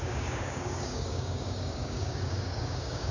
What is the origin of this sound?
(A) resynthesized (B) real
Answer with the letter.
A